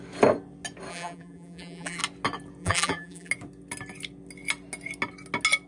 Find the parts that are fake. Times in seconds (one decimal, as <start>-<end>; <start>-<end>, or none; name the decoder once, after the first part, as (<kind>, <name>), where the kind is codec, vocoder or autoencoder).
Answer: 0.9-2.0 (vocoder, BigVGAN v2); 2.6-3.3